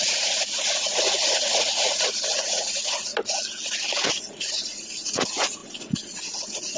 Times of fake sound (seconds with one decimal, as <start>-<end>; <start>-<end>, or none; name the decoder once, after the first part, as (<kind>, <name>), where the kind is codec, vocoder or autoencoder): 0.0-3.1 (vocoder, Vocos); 4.2-6.8